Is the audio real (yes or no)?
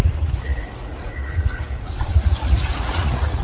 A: no